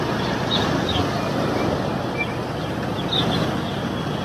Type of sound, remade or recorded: recorded